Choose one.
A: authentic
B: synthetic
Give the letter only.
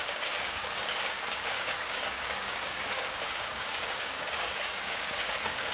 B